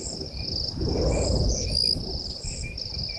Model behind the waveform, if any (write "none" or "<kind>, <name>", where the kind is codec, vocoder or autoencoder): none